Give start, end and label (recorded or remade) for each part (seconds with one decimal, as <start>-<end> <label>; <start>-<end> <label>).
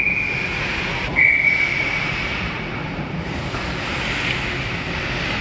0.0-0.5 recorded; 0.5-3.7 remade; 3.7-5.4 recorded